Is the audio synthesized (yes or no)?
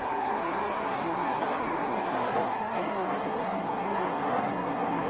yes